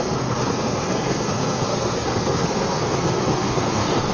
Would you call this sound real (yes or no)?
no